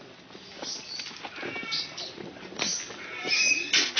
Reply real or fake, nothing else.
real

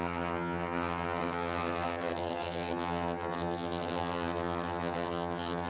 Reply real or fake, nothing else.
fake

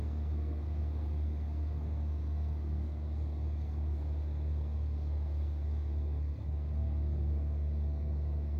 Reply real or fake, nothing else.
fake